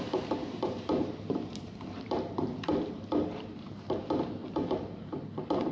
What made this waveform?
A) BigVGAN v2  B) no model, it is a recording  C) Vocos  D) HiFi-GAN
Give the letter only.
A